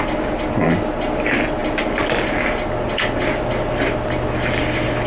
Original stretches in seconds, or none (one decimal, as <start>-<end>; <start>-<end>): 0.0-5.1